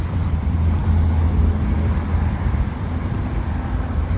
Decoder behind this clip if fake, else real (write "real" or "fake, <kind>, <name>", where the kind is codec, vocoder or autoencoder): fake, vocoder, BigVGAN v2